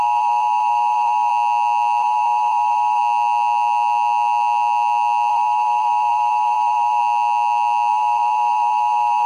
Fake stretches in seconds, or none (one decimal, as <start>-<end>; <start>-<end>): 0.0-1.3; 2.0-3.0; 5.3-7.0; 7.9-9.3